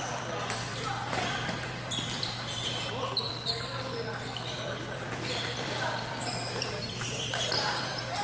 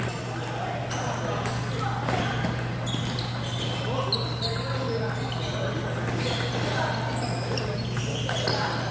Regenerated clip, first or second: first